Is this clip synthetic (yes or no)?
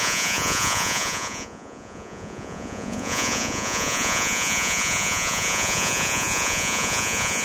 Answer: yes